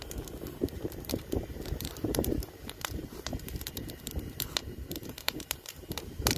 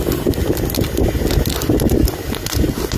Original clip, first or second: second